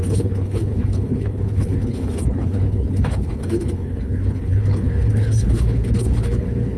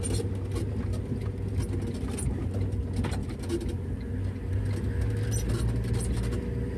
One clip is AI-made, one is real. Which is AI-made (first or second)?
first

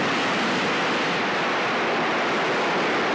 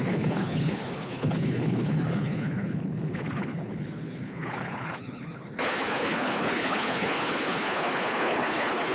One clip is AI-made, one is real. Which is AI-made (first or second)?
second